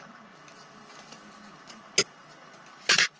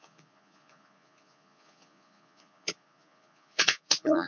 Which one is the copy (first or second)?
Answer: second